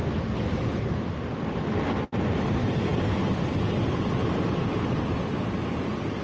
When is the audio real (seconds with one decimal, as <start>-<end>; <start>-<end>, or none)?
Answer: 0.0-0.7; 2.9-4.9